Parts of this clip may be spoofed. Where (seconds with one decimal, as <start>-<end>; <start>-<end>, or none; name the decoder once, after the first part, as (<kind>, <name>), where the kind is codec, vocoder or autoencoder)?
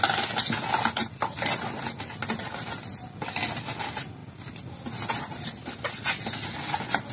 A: none